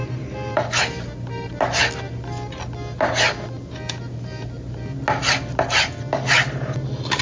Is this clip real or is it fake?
real